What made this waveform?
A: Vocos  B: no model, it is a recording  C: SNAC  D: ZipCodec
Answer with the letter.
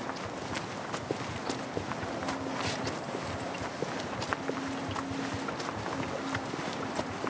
B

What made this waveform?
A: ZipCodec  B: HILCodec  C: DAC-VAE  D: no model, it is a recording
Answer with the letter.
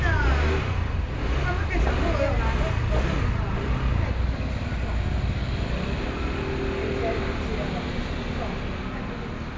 D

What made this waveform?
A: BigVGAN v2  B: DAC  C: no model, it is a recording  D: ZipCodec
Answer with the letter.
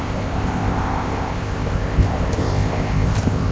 D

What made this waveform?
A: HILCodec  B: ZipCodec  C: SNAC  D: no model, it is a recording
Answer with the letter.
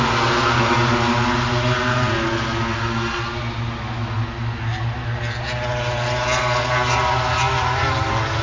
D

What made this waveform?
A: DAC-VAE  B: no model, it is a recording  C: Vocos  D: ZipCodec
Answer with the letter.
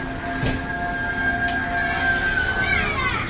B